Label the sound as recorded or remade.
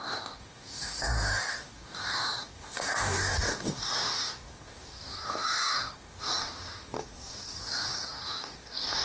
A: remade